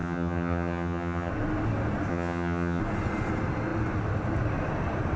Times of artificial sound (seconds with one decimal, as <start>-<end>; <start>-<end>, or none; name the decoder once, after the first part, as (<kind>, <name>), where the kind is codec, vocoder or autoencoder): 0.0-1.3 (vocoder, HiFi-GAN); 2.1-2.8